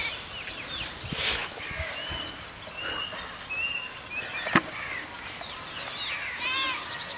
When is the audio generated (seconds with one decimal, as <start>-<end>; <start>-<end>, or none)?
none